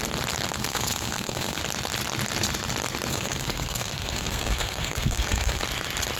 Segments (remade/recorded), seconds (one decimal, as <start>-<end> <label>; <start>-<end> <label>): 0.0-0.6 recorded; 0.6-1.6 remade; 1.6-3.1 recorded; 3.1-5.6 remade; 5.6-6.2 recorded